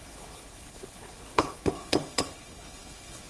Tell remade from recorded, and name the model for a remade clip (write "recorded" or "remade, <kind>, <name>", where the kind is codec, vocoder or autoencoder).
remade, codec, HILCodec